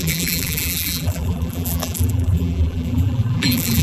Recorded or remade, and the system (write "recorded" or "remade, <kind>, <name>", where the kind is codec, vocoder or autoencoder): remade, vocoder, BigVGAN v2